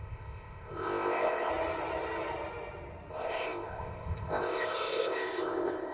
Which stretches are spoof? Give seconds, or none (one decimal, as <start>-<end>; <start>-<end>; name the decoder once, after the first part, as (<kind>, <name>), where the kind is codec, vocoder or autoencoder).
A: 0.0-1.5 (codec, ZipCodec); 3.1-5.9